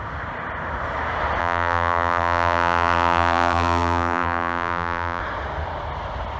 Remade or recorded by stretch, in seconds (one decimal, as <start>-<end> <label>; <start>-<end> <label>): 0.0-1.4 recorded; 1.4-5.2 remade; 5.2-6.4 recorded